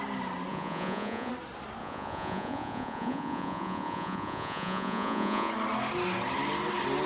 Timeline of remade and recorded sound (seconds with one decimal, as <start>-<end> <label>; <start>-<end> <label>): 0.0-0.5 recorded; 0.5-1.3 remade; 1.3-1.8 recorded; 1.8-5.5 remade; 5.5-7.1 recorded

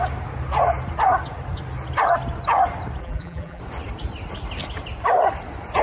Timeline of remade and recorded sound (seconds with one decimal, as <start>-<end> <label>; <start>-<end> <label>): 0.0-3.0 recorded; 3.0-3.6 remade; 3.6-5.8 recorded

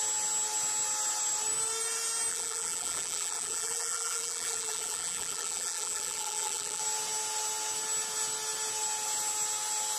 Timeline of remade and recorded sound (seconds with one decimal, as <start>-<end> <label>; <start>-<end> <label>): 0.0-2.3 recorded; 2.3-6.8 remade; 6.8-10.0 recorded

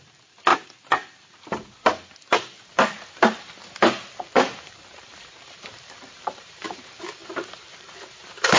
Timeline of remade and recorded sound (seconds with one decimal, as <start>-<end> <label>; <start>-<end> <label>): 0.0-0.5 remade; 0.5-4.6 recorded; 4.6-7.2 remade; 7.2-7.7 recorded; 7.7-8.6 remade

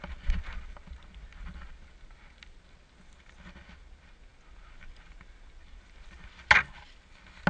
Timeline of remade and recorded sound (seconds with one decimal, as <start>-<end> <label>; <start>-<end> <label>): 0.0-7.5 recorded

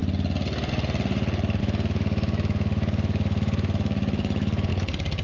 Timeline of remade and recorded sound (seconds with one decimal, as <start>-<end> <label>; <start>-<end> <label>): 0.0-1.6 recorded; 1.6-4.7 remade; 4.7-5.2 recorded